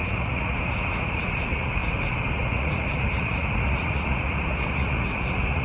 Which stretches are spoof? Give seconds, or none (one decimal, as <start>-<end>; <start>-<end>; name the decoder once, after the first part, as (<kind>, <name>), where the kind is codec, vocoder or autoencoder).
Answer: 0.0-1.8 (vocoder, Vocos); 2.3-5.6